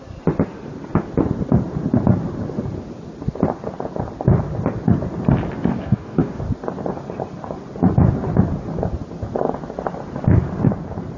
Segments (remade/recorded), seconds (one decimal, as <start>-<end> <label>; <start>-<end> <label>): 0.0-5.7 recorded; 5.7-6.4 remade; 6.4-11.2 recorded

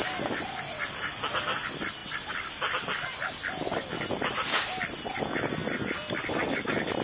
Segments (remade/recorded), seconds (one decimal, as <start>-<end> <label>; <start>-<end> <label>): 0.0-7.0 recorded

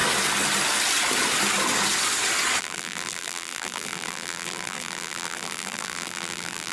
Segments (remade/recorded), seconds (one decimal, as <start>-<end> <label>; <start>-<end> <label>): 0.0-2.6 recorded; 2.6-6.7 remade

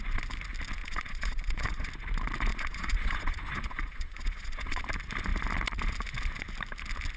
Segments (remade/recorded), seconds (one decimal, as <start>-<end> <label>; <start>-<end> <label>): 0.0-0.8 recorded; 0.8-1.9 remade; 1.9-2.5 recorded; 2.5-4.8 remade; 4.8-7.2 recorded

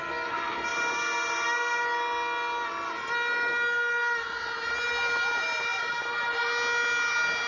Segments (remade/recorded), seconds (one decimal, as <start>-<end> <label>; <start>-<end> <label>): 0.0-7.5 recorded

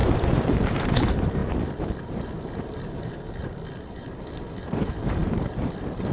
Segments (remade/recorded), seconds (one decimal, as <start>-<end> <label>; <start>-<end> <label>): 0.0-6.1 remade

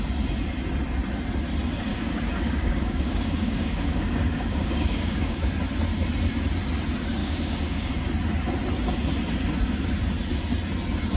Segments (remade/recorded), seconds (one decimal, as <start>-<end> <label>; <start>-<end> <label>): 0.0-1.9 recorded; 1.9-5.5 remade; 5.5-7.2 recorded; 7.2-7.9 remade; 7.9-11.2 recorded